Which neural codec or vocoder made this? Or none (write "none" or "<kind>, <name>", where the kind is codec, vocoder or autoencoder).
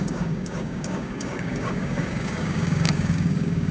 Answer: codec, DAC